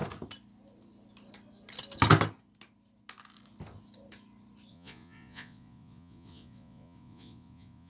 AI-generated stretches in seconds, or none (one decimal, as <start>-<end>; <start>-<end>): 4.7-7.9